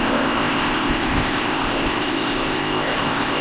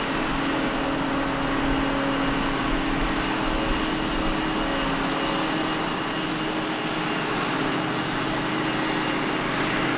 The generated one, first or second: first